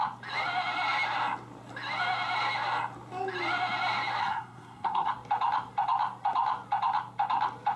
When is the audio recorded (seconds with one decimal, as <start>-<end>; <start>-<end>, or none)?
0.0-4.2; 5.1-7.8